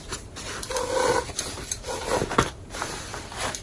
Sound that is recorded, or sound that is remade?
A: remade